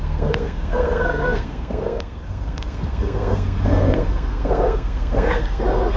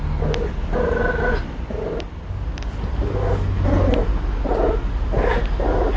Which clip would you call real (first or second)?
second